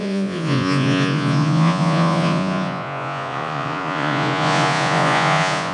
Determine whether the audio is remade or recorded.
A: remade